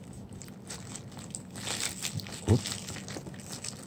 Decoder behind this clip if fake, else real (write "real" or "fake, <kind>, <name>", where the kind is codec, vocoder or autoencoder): real